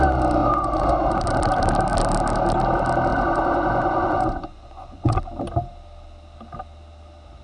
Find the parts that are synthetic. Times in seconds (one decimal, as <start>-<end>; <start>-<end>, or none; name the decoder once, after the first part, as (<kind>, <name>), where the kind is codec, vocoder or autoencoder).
0.4-1.2 (vocoder, Vocos); 3.1-5.2